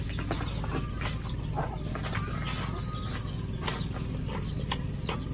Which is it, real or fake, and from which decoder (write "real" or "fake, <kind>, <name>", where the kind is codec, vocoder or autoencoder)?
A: real